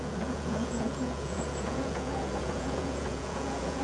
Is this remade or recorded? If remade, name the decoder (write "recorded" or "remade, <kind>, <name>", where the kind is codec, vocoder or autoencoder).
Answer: remade, vocoder, Vocos